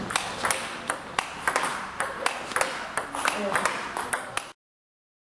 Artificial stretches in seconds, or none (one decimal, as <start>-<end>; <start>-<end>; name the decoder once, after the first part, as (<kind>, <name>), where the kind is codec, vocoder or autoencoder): none